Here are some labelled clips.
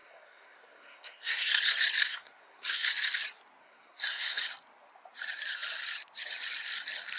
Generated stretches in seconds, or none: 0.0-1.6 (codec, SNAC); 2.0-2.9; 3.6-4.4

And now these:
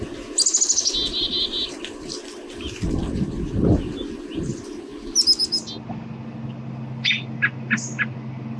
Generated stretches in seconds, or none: none